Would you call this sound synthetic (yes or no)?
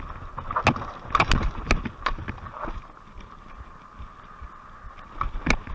no